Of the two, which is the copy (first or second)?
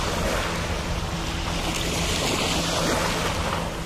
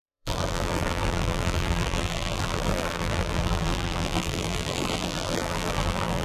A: second